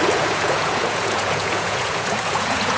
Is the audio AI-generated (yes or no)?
yes